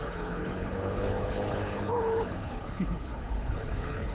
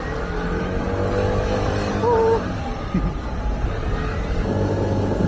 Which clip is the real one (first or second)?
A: second